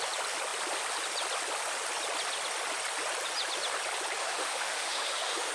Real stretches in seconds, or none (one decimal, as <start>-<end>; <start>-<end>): 0.0-4.2